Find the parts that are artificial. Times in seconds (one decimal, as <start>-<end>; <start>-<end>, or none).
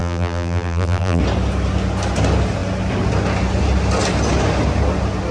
0.0-1.2